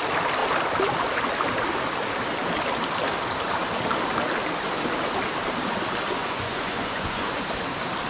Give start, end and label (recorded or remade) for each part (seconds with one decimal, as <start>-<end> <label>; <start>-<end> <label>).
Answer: 0.0-6.2 recorded; 6.2-7.4 remade; 7.4-8.1 recorded